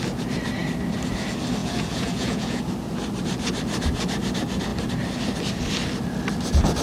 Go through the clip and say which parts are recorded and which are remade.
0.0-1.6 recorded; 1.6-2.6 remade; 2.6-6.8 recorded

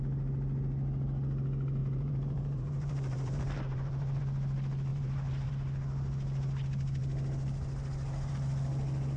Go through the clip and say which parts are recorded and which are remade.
0.0-1.8 recorded; 1.8-4.2 remade; 4.2-4.9 recorded; 4.9-5.5 remade; 5.5-9.2 recorded

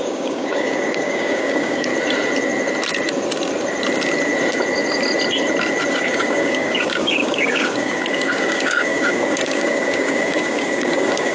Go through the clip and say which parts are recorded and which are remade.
0.0-1.9 remade; 1.9-5.9 recorded; 5.9-11.3 remade